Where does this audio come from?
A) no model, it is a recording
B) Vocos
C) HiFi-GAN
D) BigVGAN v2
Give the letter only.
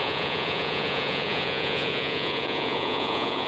B